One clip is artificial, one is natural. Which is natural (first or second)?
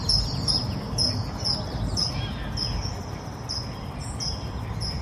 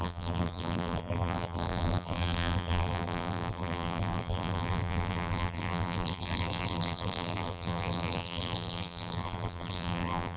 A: first